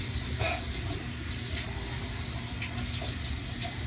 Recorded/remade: recorded